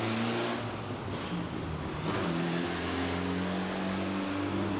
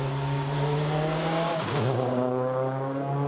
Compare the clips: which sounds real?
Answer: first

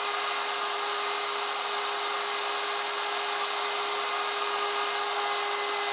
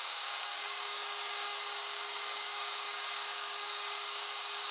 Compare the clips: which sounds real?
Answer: first